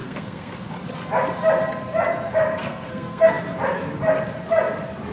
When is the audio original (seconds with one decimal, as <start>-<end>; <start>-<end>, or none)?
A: 0.7-2.6; 3.4-5.1